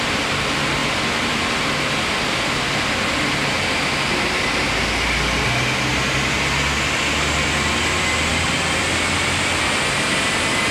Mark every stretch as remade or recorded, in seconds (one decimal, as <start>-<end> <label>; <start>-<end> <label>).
0.0-10.7 recorded